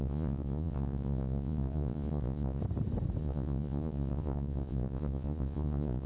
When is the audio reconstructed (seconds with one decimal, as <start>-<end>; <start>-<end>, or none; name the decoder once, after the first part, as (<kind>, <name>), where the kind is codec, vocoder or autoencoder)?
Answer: 0.0-2.6 (vocoder, Vocos); 3.2-6.1